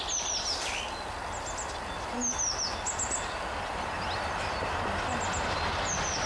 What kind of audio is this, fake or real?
real